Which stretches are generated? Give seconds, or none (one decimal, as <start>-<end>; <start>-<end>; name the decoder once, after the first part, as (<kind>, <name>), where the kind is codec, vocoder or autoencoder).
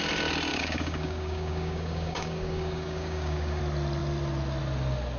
0.5-3.6 (codec, DAC)